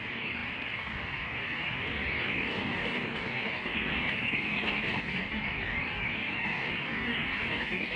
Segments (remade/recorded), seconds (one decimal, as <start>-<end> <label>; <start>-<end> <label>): 0.0-8.0 remade